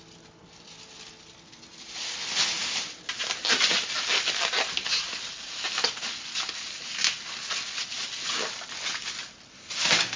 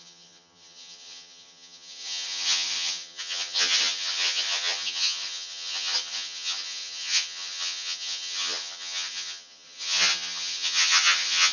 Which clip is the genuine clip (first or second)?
first